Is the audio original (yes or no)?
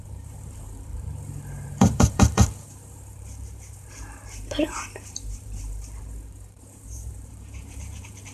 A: no